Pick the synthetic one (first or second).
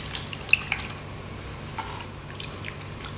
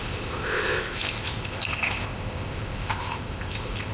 second